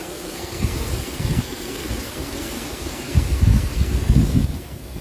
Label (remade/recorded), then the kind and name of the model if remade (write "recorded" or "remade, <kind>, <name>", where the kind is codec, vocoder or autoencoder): remade, codec, SNAC